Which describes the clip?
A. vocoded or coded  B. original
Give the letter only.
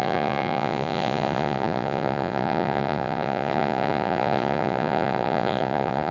A